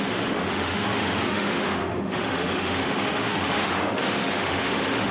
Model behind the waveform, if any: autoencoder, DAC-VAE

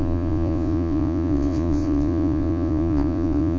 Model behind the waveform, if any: vocoder, Vocos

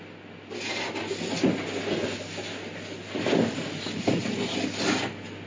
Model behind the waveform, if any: none